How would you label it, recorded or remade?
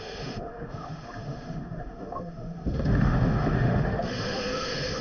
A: remade